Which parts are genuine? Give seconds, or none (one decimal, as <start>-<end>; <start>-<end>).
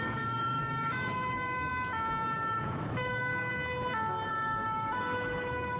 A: 1.7-2.6; 3.3-4.3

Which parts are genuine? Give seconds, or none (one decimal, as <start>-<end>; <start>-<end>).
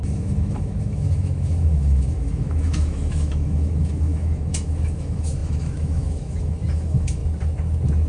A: 7.2-8.1